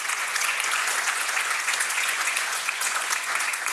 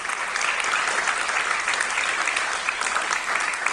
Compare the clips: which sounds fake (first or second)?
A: first